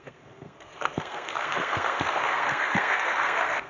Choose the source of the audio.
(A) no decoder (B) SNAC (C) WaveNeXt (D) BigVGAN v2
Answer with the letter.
B